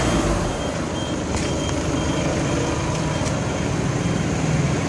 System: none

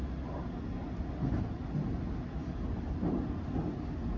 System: none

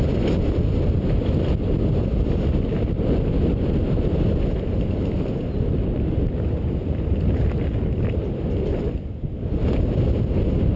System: none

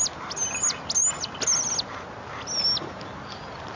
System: none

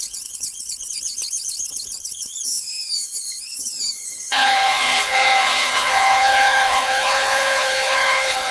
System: codec, HILCodec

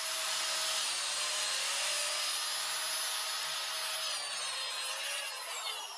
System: none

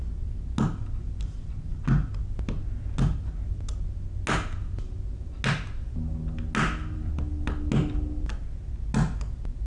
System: none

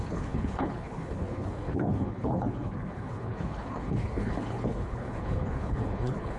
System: codec, HILCodec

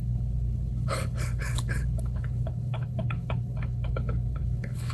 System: codec, HILCodec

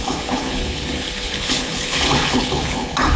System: codec, HILCodec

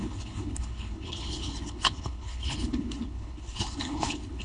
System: codec, HILCodec